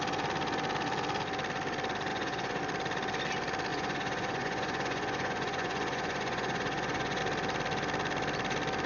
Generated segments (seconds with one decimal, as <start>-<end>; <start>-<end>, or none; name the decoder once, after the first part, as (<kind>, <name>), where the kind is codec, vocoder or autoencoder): 2.1-2.6 (vocoder, Vocos); 3.7-7.2